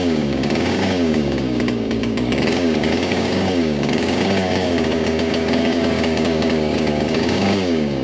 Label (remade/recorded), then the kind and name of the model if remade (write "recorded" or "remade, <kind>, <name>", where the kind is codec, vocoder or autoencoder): remade, codec, DAC